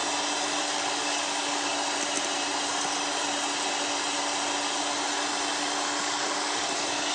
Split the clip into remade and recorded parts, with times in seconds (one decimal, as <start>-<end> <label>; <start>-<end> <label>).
0.0-0.6 recorded; 0.6-1.7 remade; 1.7-6.0 recorded; 6.0-7.1 remade